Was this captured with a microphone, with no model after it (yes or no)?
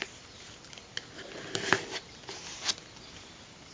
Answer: yes